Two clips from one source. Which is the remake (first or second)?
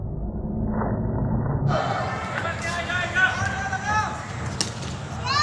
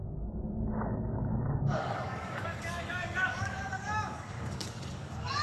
second